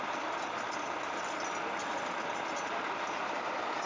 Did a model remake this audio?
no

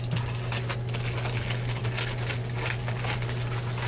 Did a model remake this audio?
no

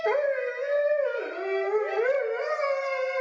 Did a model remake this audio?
no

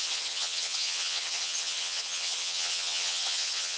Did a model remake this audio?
yes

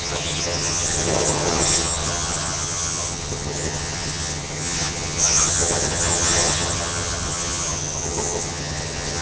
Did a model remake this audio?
yes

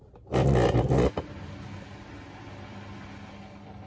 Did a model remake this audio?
no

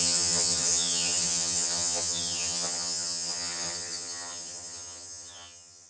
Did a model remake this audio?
yes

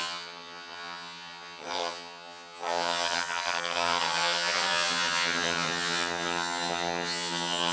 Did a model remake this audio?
yes